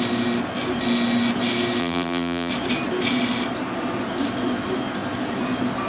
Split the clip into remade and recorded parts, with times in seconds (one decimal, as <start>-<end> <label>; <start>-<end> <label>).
0.0-1.8 recorded; 1.8-2.5 remade; 2.5-5.9 recorded